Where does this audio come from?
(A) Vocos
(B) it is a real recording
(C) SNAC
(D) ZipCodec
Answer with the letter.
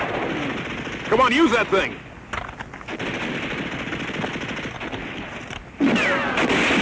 B